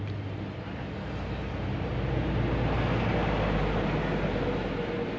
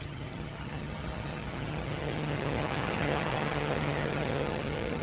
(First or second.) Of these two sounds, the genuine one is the first